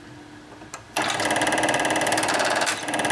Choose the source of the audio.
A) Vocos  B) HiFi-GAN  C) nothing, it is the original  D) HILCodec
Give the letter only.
C